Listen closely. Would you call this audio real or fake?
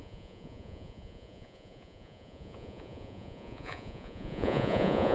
fake